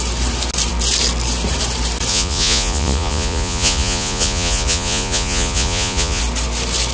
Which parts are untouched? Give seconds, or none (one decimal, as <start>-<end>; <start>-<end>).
0.0-2.1; 6.2-6.9